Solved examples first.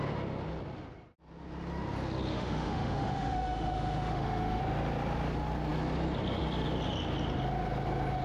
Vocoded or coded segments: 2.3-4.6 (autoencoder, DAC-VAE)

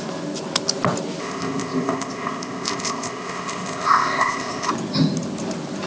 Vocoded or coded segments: 1.2-4.7 (codec, ZipCodec)

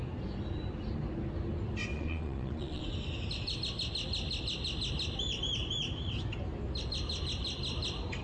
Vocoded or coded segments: 1.9-2.8 (vocoder, Vocos)

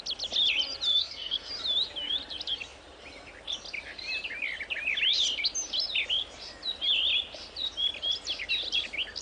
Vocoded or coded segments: 0.9-1.5 (codec, SNAC)

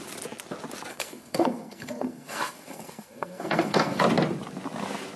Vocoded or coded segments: 0.9-4.0 (codec, SNAC)

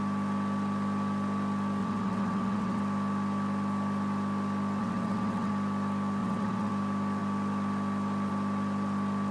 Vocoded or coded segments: 1.8-2.8 (vocoder, WaveNeXt); 4.8-5.5; 6.2-6.7